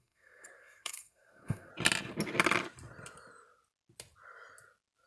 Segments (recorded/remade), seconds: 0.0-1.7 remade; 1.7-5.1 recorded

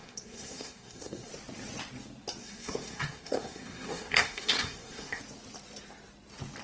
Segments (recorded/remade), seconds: 0.0-1.3 remade; 1.3-2.4 recorded; 2.4-5.2 remade; 5.2-6.6 recorded